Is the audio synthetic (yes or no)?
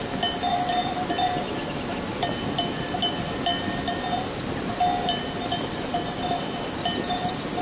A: no